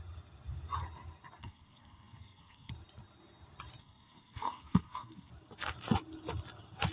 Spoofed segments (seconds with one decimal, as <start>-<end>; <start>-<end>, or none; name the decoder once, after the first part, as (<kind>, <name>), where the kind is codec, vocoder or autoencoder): 1.4-2.7 (codec, SNAC); 3.8-5.3